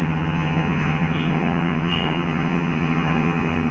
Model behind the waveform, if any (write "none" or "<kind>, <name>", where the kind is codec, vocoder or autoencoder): vocoder, HiFi-GAN